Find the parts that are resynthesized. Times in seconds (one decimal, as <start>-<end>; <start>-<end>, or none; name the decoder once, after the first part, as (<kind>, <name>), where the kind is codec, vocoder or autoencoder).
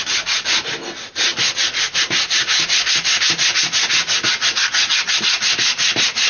none